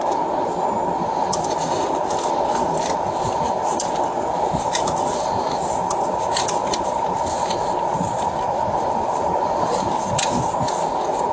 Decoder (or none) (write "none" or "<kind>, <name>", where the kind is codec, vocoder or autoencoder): none